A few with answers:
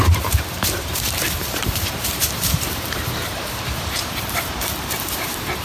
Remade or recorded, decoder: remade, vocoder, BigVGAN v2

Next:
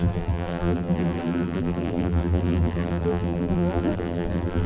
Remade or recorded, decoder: remade, vocoder, BigVGAN v2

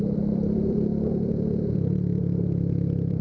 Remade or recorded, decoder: remade, vocoder, BigVGAN v2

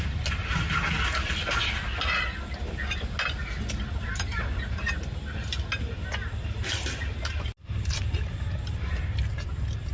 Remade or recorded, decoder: recorded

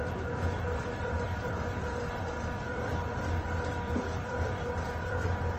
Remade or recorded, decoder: remade, vocoder, BigVGAN v2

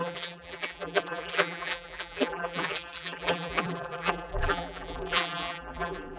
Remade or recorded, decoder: remade, vocoder, BigVGAN v2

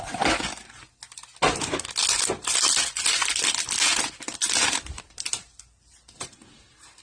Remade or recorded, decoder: recorded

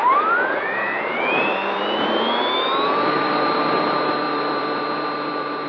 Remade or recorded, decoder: remade, vocoder, BigVGAN v2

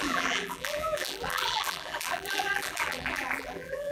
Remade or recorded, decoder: remade, vocoder, BigVGAN v2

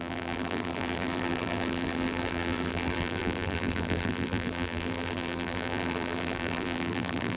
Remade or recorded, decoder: remade, vocoder, BigVGAN v2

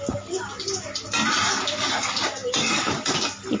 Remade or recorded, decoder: remade, vocoder, BigVGAN v2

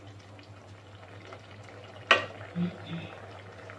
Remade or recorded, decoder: recorded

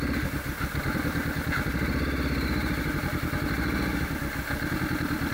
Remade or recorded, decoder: recorded